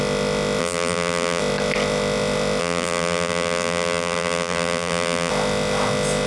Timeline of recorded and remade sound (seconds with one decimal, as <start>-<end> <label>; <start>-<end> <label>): 0.0-0.6 recorded; 0.6-1.4 remade; 1.4-2.6 recorded; 2.6-5.3 remade; 5.3-6.3 recorded